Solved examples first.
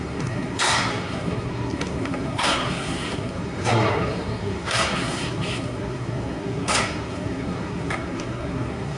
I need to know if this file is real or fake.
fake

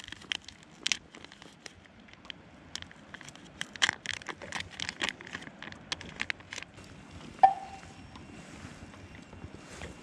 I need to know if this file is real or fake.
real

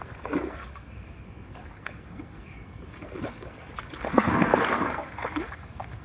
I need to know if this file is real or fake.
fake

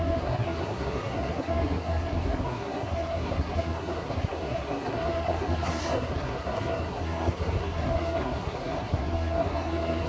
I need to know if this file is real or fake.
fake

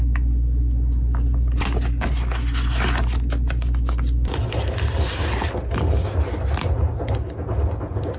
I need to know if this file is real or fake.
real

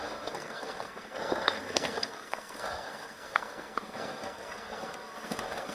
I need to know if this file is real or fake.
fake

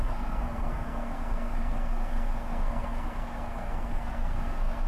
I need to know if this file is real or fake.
fake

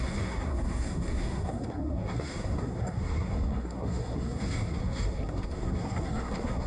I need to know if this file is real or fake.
fake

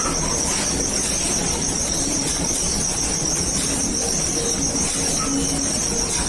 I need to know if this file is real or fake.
real